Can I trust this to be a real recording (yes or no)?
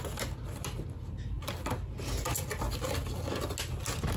yes